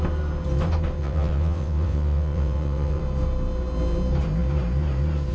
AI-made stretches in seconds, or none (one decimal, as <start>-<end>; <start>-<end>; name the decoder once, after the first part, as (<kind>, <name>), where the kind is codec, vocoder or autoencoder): 1.0-3.0 (vocoder, WaveNeXt)